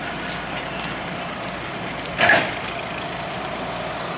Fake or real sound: real